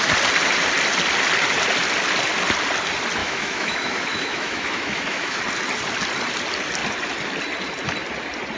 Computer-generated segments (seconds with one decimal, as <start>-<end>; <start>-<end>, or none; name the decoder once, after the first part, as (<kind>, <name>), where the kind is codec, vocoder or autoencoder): 3.2-5.4 (autoencoder, DAC-VAE)